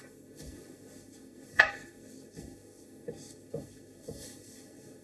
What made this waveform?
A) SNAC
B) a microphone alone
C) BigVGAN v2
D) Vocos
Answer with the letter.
A